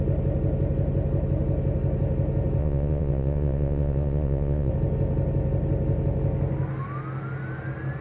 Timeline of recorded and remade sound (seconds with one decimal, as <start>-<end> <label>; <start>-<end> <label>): 0.0-2.6 recorded; 2.6-4.7 remade; 4.7-8.0 recorded